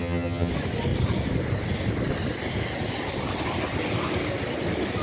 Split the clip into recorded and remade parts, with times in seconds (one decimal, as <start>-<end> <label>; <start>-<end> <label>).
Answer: 0.0-0.5 remade; 0.5-5.0 recorded